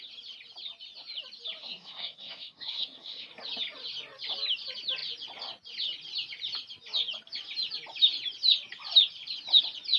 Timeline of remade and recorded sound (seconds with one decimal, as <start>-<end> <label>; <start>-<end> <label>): 0.0-1.6 recorded; 1.6-3.3 remade; 3.3-10.0 recorded